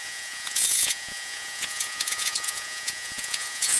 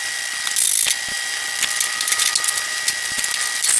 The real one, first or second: second